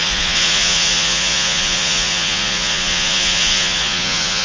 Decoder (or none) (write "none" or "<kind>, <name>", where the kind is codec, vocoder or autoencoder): vocoder, Vocos